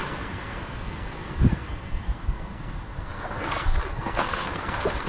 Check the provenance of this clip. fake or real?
fake